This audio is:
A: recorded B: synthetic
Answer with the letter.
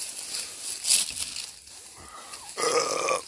A